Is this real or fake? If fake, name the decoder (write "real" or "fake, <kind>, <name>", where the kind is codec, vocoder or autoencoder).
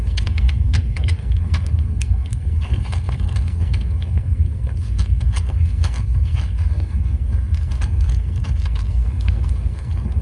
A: fake, codec, SNAC